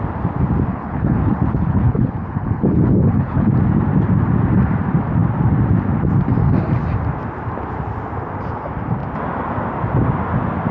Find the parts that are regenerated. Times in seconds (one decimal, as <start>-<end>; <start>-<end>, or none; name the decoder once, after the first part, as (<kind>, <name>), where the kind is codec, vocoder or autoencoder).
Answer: 0.7-3.5 (codec, HILCodec)